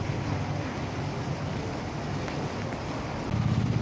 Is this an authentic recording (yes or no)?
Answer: yes